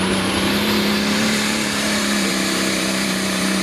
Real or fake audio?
fake